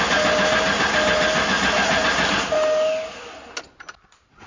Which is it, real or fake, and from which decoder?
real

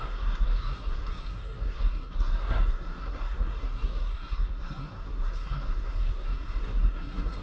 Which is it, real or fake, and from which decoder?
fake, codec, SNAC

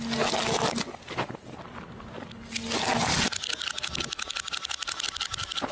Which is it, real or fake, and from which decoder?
real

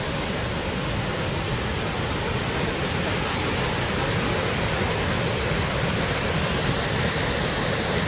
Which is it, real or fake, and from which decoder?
real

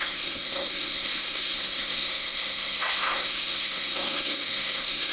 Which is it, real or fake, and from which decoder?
fake, codec, SNAC